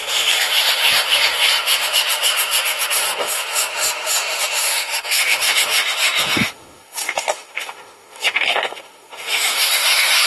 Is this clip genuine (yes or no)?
no